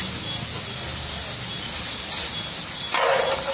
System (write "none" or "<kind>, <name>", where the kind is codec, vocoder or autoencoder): none